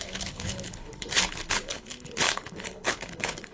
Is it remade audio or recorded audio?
remade